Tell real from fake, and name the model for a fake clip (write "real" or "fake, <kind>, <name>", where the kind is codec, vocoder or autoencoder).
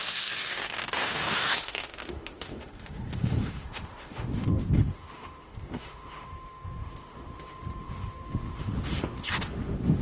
fake, autoencoder, DAC-VAE